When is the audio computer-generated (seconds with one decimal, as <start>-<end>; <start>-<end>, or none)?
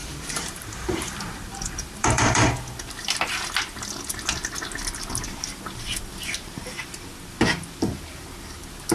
0.0-2.5